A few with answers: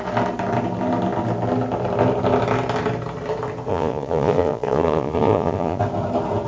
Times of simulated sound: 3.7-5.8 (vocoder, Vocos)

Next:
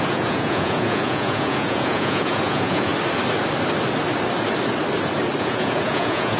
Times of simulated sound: 0.0-2.9 (vocoder, Vocos); 5.4-6.4

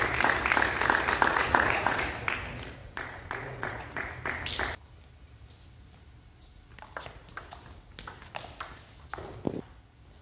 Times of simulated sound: 1.3-2.1 (vocoder, Vocos); 2.8-4.1

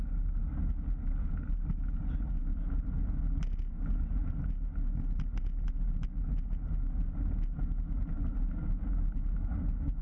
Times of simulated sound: none

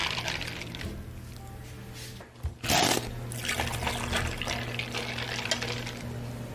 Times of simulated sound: none

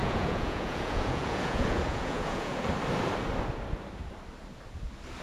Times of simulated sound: 0.0-2.7 (vocoder, Vocos)

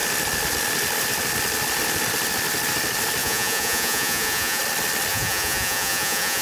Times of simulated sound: 3.2-4.6 (vocoder, Vocos); 5.1-6.4

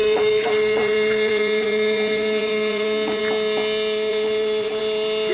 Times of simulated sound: 0.0-3.2 (vocoder, Vocos); 4.1-4.8